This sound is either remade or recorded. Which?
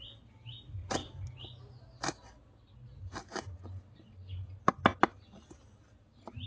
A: recorded